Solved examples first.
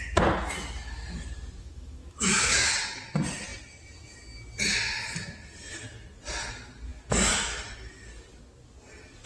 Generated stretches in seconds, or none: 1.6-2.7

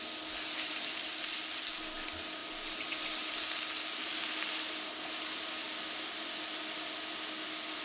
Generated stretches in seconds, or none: none

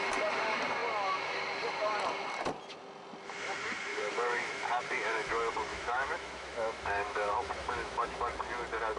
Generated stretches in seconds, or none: 3.9-5.3; 5.7-8.2

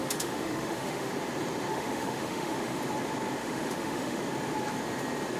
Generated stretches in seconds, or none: 0.0-1.1; 1.7-2.8; 3.4-4.2

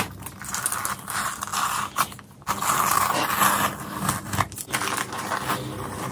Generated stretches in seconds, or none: none

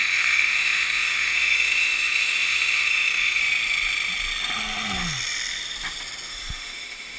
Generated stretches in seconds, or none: 0.0-3.4; 6.3-7.2

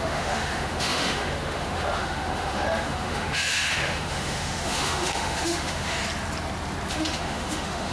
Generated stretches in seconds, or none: 0.0-6.0; 6.9-7.9

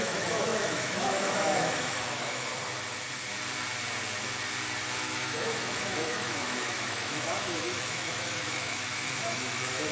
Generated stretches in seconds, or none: 0.0-2.5; 5.0-9.9